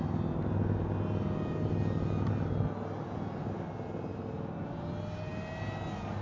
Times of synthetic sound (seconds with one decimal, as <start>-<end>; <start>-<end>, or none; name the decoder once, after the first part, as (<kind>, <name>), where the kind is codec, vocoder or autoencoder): none